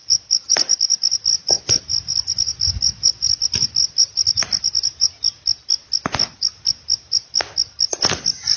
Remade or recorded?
recorded